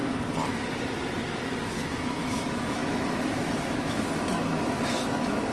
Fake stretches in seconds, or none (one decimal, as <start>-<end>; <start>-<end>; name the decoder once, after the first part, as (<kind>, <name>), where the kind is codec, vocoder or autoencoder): 1.8-5.5 (autoencoder, DAC-VAE)